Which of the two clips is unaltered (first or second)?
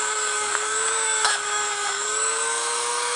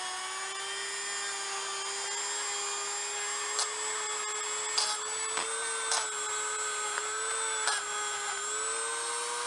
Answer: second